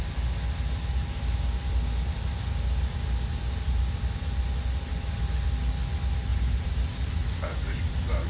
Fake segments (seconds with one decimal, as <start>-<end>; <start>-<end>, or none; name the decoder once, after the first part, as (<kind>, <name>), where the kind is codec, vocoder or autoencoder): 6.3-8.3 (vocoder, BigVGAN v2)